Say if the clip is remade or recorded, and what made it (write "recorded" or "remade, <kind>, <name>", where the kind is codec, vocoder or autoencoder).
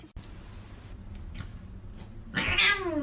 recorded